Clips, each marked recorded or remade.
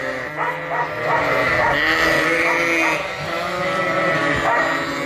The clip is recorded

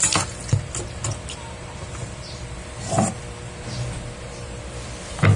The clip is recorded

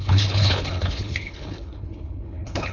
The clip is remade